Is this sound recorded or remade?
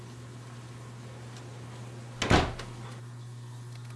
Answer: recorded